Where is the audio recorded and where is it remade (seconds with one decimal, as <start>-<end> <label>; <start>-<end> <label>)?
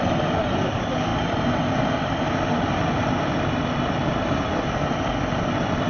0.0-5.9 recorded